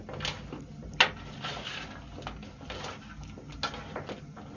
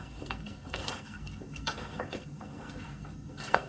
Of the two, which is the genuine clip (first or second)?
first